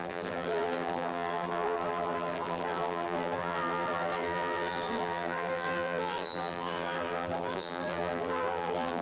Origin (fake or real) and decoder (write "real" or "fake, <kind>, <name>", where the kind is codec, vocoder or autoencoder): fake, vocoder, BigVGAN v2